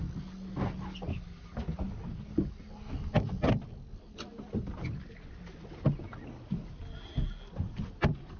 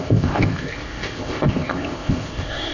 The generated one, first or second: second